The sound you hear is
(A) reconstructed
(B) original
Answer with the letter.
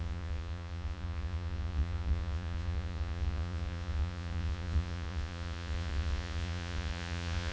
A